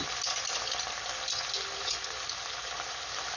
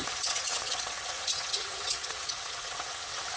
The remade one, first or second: second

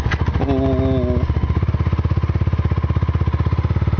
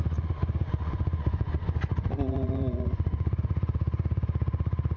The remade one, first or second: second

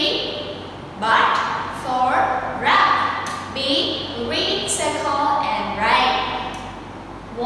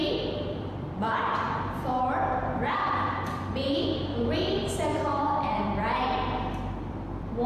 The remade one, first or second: second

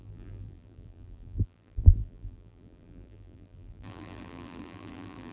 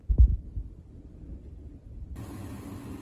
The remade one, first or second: first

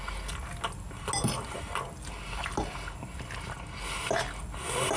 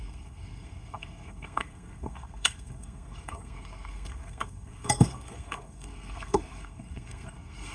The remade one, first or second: second